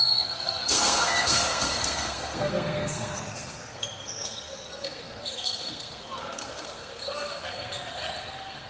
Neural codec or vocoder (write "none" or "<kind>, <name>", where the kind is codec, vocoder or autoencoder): codec, SNAC